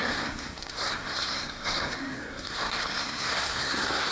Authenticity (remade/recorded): remade